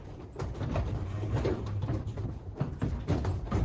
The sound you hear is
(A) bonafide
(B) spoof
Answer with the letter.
B